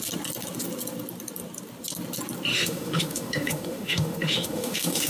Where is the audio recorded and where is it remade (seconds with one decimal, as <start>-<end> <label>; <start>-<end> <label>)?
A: 0.0-2.5 recorded; 2.5-5.1 remade